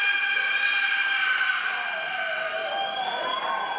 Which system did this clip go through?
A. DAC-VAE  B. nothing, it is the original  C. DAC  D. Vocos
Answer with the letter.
B